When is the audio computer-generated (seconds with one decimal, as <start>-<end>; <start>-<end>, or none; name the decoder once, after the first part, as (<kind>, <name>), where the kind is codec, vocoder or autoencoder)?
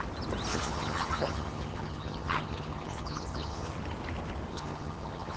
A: 0.5-3.7 (vocoder, HiFi-GAN); 4.5-5.4